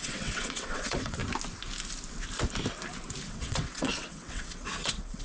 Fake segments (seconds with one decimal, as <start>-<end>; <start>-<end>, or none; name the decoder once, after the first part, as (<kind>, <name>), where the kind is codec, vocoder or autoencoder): 0.0-1.2 (vocoder, WaveNeXt); 3.3-5.2